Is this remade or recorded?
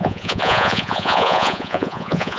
remade